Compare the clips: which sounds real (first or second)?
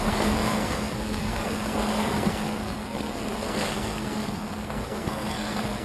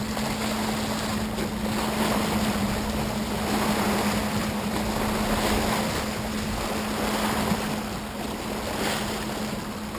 second